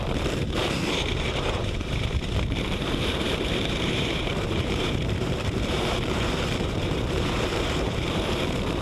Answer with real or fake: fake